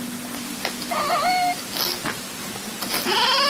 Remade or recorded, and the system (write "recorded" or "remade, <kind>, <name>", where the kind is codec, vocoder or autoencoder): recorded